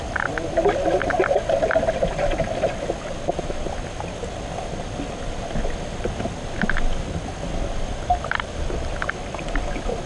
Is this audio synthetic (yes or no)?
no